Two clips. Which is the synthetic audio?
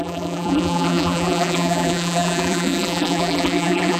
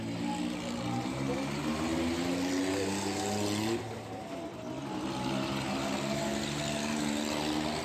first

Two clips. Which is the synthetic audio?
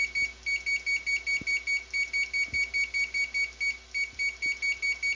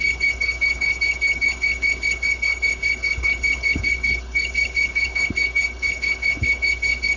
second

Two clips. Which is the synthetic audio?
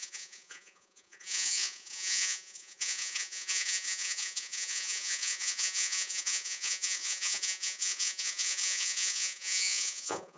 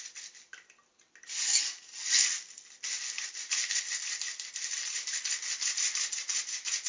first